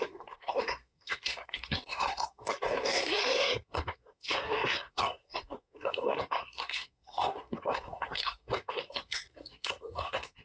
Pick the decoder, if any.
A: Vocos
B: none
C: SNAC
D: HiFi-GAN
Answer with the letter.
C